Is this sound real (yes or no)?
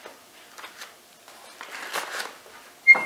yes